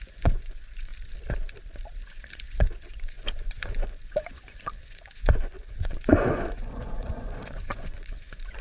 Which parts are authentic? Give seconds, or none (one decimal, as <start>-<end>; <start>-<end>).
0.9-2.0